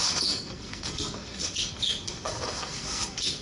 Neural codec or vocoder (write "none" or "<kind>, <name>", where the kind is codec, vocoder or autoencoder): codec, SNAC